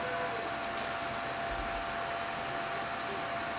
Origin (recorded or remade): recorded